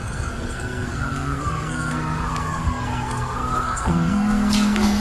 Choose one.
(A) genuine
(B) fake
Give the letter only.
B